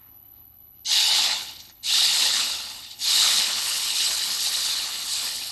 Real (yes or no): no